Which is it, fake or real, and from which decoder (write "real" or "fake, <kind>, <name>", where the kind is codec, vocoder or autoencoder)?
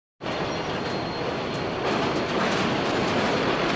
real